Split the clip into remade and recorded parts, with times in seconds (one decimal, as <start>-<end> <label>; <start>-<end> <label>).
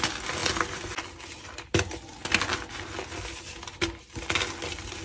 0.0-5.0 recorded